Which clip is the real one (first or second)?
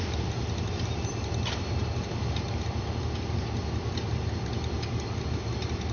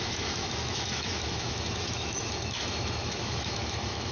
first